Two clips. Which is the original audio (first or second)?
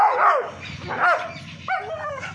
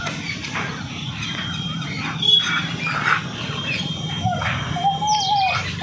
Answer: first